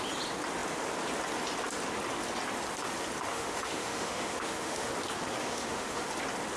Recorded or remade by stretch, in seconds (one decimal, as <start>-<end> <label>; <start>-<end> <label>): 0.0-3.3 recorded; 3.3-4.9 remade; 4.9-5.4 recorded; 5.4-6.1 remade; 6.1-6.6 recorded